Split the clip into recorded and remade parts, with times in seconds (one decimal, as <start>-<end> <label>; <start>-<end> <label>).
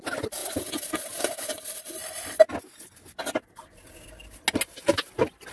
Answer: 0.0-5.5 recorded